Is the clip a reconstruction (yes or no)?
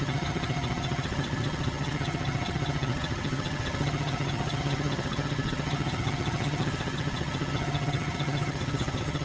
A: yes